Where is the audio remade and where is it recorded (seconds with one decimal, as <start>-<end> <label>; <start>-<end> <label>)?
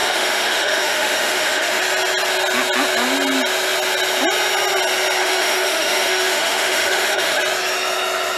0.0-1.8 remade; 1.8-5.2 recorded; 5.2-7.4 remade; 7.4-8.4 recorded